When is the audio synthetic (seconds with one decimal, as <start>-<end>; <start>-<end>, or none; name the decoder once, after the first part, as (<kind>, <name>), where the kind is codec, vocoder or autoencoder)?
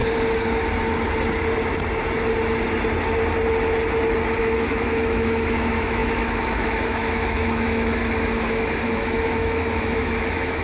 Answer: 4.4-10.6 (autoencoder, DAC-VAE)